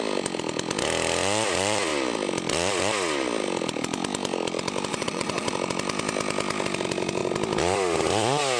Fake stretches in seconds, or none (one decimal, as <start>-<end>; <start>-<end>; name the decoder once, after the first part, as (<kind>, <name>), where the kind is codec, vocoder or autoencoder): 4.9-5.5 (vocoder, WaveNeXt)